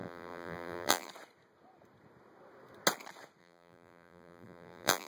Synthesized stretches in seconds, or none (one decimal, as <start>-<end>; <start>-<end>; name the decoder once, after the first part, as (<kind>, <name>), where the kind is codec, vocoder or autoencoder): 0.0-1.1 (vocoder, BigVGAN v2); 3.4-5.1